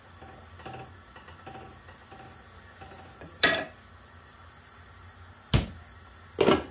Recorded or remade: recorded